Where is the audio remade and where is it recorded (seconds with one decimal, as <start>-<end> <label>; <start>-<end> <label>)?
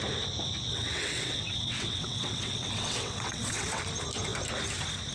0.0-0.7 recorded; 0.7-3.8 remade; 3.8-5.1 recorded